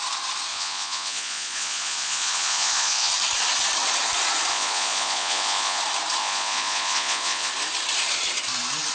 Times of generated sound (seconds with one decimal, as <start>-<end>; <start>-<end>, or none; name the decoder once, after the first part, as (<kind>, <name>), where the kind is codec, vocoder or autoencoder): 0.5-3.1 (vocoder, Vocos); 4.5-5.8; 6.2-7.5